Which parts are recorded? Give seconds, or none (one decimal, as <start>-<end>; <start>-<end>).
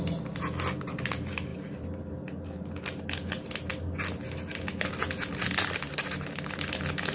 0.0-1.5; 2.0-7.1